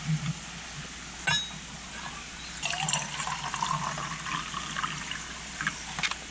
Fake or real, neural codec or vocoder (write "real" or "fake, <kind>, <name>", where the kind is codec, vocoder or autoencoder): real